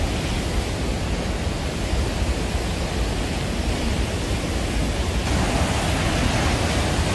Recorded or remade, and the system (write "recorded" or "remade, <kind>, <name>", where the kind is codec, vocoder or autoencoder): recorded